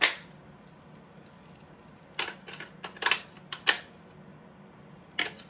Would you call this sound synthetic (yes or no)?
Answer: no